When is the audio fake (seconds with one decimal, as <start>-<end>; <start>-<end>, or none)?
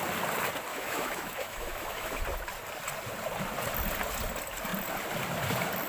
0.7-2.2